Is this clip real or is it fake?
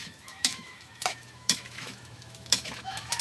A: fake